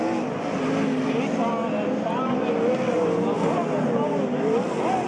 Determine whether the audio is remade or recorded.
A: recorded